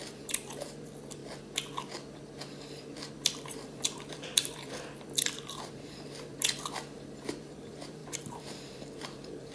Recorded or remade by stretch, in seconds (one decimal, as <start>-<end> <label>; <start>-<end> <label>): 0.0-1.2 remade; 1.2-3.1 recorded; 3.1-9.5 remade